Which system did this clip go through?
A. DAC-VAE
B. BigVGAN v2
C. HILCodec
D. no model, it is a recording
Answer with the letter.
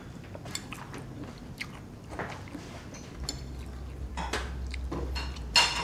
D